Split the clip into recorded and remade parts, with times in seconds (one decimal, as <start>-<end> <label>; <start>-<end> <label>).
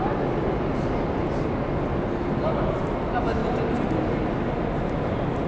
0.0-3.4 recorded; 3.4-4.0 remade; 4.0-5.5 recorded